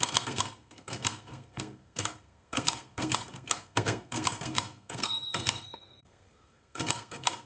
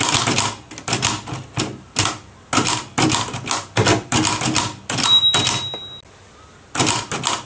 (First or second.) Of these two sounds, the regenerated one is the first